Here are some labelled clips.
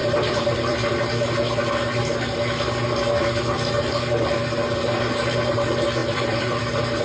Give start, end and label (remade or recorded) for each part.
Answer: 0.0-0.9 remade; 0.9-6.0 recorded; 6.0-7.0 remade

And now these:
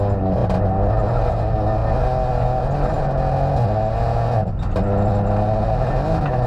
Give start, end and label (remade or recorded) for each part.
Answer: 0.0-6.5 recorded

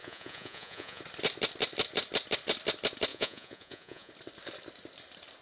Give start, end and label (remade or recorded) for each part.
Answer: 0.0-1.0 remade; 1.0-3.1 recorded; 3.1-4.1 remade; 4.1-5.4 recorded

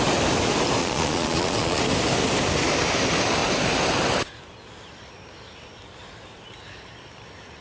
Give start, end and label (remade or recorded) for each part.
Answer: 0.0-0.8 recorded; 0.8-1.8 remade; 1.8-7.6 recorded